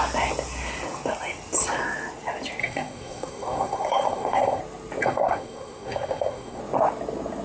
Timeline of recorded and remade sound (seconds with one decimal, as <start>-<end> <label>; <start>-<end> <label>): 0.0-2.6 recorded; 2.6-4.6 remade; 4.6-5.0 recorded; 5.0-6.6 remade; 6.6-7.4 recorded